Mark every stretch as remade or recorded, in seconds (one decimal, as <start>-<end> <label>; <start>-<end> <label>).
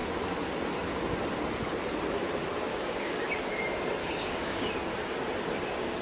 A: 0.0-2.7 recorded; 2.7-3.3 remade; 3.3-4.0 recorded; 4.0-4.7 remade; 4.7-6.0 recorded